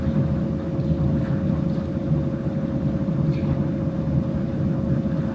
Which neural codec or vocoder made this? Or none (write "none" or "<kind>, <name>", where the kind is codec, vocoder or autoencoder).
none